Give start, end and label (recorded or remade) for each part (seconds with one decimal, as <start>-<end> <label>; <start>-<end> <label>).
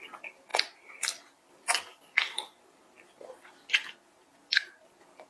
0.0-0.5 recorded; 0.5-3.7 remade; 3.7-5.3 recorded